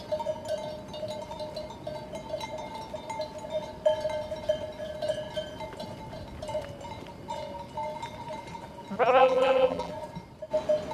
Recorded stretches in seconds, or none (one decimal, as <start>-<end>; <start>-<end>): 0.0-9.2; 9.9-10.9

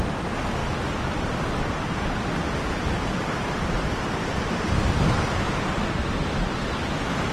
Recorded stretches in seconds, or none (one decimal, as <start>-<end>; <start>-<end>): 0.0-0.6; 4.3-7.3

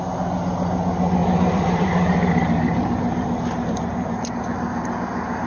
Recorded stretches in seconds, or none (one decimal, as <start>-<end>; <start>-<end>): 0.0-1.2; 4.3-5.5

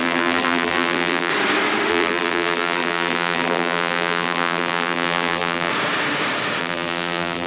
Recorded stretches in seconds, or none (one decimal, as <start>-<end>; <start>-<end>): 1.3-1.9; 5.7-6.6

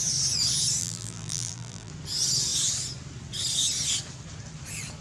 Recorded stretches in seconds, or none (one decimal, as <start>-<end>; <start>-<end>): 0.0-0.8; 1.9-5.0

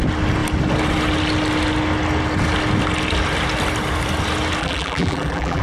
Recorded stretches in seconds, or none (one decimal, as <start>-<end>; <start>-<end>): 0.0-4.6

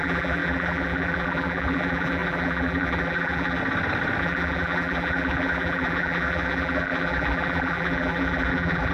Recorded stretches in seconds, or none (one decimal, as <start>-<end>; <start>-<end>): 3.6-4.2

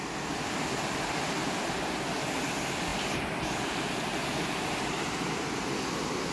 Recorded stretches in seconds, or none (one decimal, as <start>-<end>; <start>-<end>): 0.0-4.1; 4.7-6.3